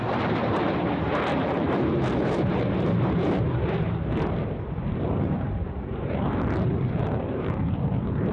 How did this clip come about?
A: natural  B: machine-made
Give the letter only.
B